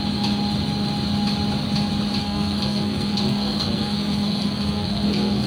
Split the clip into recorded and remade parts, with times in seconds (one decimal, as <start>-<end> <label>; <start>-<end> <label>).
0.0-2.2 recorded; 2.2-5.5 remade